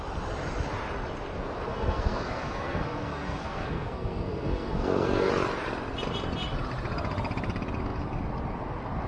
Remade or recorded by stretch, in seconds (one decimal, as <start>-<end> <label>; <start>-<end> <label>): 0.0-1.7 recorded; 1.7-5.3 remade; 5.3-9.1 recorded